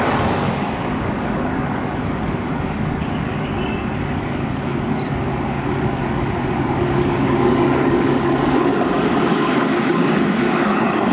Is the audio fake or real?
fake